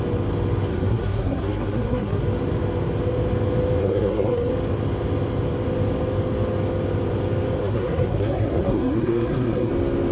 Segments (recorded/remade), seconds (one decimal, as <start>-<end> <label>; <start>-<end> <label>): 0.0-0.7 recorded; 0.7-2.2 remade; 2.2-3.8 recorded; 3.8-4.5 remade; 4.5-7.6 recorded; 7.6-9.7 remade; 9.7-10.1 recorded